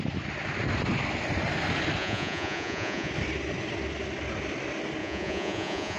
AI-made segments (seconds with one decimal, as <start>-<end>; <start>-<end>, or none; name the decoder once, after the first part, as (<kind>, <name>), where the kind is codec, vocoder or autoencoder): 2.0-3.1 (vocoder, Vocos); 5.0-6.0